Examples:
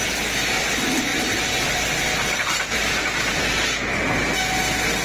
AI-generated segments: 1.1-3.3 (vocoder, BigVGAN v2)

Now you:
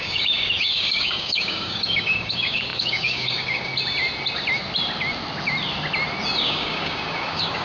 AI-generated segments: 0.0-3.7 (codec, DAC); 6.4-7.6

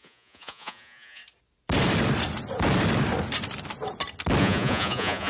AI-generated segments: 0.0-1.2 (vocoder, Vocos); 4.4-5.3